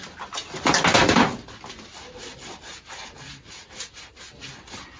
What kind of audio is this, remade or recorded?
recorded